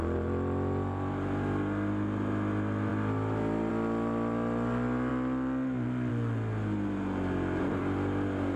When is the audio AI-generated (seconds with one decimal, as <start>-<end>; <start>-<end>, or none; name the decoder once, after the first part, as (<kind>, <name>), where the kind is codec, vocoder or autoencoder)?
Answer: none